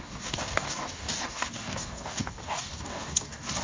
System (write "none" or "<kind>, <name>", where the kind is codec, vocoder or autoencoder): codec, DAC